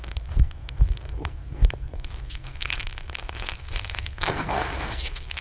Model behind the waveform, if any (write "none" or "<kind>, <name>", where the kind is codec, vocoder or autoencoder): codec, SNAC